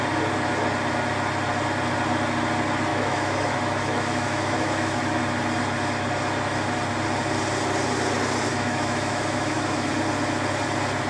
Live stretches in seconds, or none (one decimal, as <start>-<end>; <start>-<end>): 0.0-2.9; 5.2-8.5; 9.9-11.1